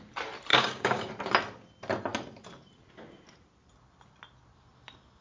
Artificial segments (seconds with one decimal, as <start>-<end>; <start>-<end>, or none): 0.5-1.1